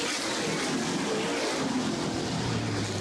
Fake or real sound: real